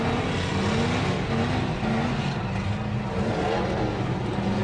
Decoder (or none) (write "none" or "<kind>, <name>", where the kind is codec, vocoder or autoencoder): none